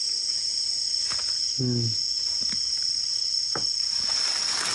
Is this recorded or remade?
recorded